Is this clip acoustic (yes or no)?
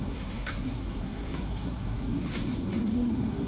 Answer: no